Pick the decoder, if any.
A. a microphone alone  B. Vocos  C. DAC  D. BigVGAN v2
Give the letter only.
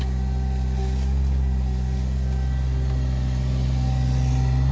A